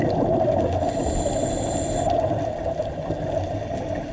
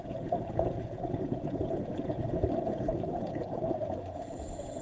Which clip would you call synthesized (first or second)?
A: second